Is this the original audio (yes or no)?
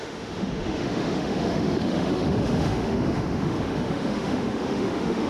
no